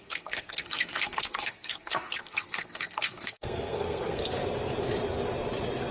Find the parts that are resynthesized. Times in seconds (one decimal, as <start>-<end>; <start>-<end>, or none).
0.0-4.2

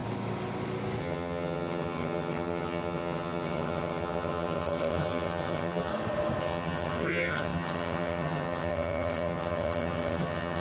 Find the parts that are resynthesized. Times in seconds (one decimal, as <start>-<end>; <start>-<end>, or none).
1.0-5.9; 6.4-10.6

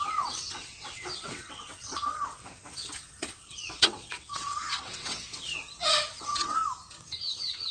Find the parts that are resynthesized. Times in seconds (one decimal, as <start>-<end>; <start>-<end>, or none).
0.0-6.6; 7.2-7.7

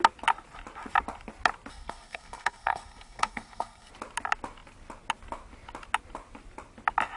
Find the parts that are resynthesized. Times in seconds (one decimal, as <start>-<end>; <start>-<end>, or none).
1.7-3.9